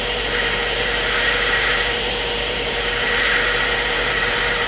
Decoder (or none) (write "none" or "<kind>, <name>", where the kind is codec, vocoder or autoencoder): vocoder, BigVGAN v2